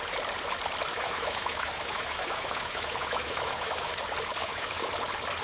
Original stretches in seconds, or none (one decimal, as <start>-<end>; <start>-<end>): 0.0-0.9; 3.9-4.4; 4.9-5.4